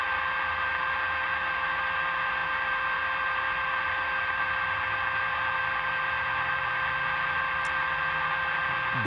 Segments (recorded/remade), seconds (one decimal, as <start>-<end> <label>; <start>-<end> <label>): 0.0-9.1 recorded